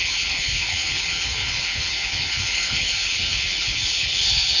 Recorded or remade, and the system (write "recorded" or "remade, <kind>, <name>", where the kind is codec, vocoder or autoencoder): remade, codec, HILCodec